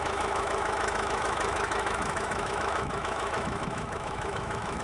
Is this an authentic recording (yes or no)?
no